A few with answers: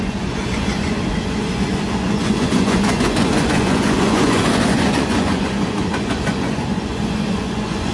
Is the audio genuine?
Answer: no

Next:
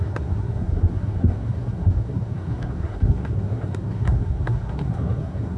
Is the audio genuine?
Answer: no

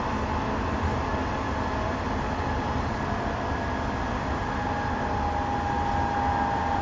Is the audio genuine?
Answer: yes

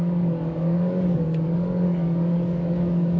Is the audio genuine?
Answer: no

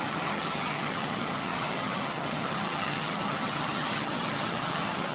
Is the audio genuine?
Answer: no